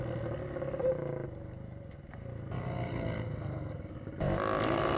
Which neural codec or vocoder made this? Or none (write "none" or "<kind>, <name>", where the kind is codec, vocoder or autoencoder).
none